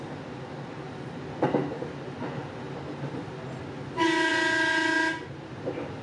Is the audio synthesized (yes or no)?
no